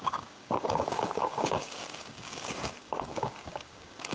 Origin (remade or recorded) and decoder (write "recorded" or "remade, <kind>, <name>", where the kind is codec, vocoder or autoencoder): remade, codec, DAC